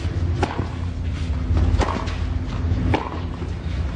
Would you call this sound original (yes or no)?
yes